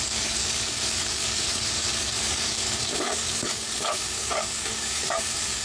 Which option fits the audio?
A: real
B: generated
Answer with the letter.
B